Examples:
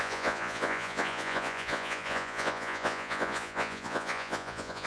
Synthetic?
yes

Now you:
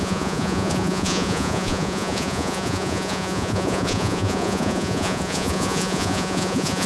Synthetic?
yes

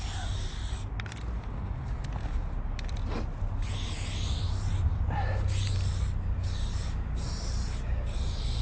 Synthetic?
no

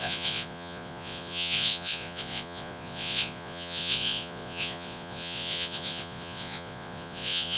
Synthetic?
yes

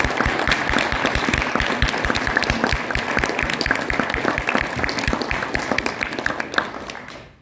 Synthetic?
no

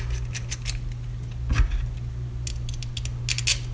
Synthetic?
no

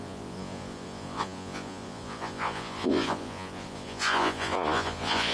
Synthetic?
yes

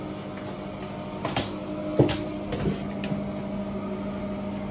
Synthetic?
no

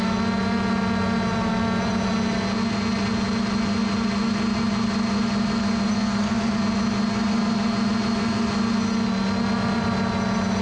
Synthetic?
no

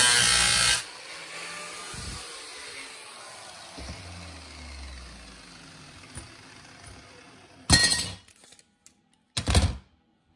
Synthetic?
no